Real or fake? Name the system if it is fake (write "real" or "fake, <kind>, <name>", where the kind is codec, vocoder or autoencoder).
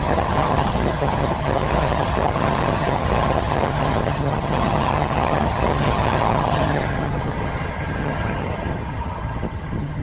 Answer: fake, vocoder, HiFi-GAN